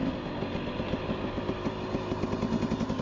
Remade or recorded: recorded